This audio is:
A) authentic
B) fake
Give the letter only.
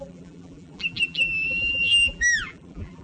B